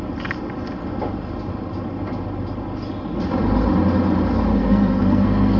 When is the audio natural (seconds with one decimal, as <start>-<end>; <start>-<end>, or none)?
0.0-4.6